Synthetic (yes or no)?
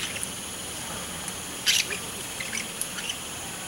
no